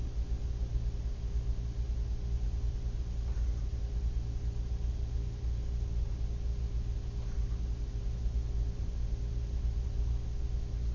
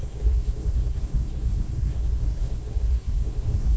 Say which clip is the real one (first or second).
first